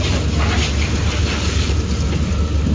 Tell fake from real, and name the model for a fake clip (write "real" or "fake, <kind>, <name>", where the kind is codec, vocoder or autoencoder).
real